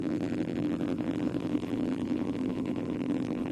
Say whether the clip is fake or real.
fake